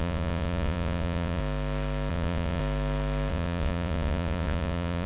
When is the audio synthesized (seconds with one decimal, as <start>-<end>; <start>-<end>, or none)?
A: 0.0-1.4; 2.1-2.6; 3.3-5.1

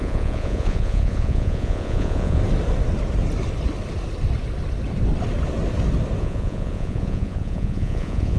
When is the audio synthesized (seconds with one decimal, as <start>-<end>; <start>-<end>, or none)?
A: 0.0-2.4; 6.2-8.4

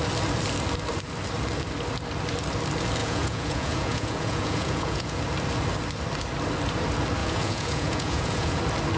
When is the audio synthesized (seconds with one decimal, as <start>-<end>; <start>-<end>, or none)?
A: 3.0-5.2; 7.2-8.6

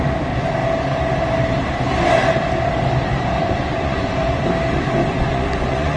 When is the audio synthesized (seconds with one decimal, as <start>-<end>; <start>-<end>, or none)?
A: 3.4-4.4; 5.0-6.0